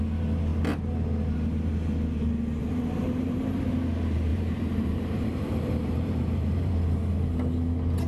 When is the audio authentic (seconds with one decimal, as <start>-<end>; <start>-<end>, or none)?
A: 0.0-2.6; 3.7-4.3; 6.7-8.1